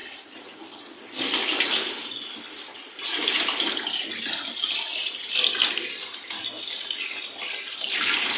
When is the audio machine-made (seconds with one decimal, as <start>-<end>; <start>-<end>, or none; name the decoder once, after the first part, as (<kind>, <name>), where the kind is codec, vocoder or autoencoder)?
none

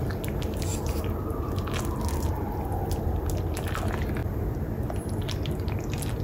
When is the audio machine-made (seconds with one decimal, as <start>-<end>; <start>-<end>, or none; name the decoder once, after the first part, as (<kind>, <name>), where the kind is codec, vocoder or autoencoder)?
2.8-3.8 (vocoder, BigVGAN v2); 4.2-5.1

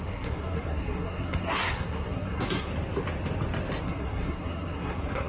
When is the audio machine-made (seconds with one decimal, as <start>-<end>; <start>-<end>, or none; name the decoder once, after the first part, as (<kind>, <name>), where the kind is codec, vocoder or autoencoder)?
0.0-2.7 (codec, SNAC); 3.8-5.3